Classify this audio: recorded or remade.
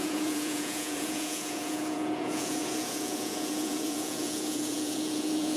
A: remade